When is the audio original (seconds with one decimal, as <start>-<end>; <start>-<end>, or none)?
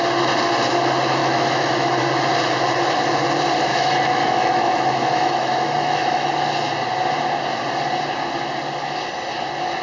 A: 0.0-1.2; 2.0-3.7; 6.3-9.8